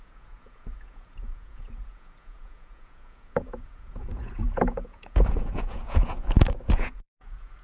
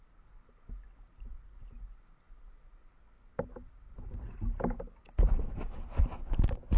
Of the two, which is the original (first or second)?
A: second